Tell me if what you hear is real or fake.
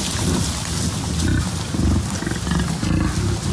real